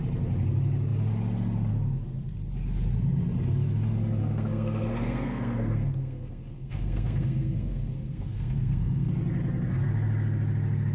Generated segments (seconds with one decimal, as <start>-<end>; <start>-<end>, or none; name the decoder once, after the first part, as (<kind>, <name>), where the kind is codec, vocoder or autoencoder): 4.2-9.1 (codec, SNAC)